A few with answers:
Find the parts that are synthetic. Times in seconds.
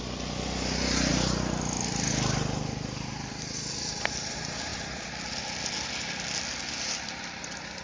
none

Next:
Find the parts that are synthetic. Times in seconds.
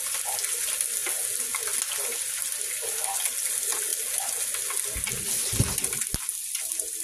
none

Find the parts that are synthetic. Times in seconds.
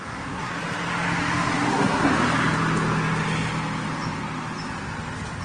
0.0-0.5 (codec, SNAC); 1.7-2.1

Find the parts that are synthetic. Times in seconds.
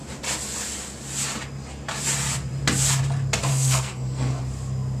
3.5-4.4 (codec, SNAC)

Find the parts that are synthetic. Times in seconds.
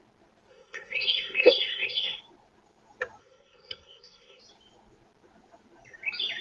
0.5-2.2 (codec, SNAC); 3.2-4.4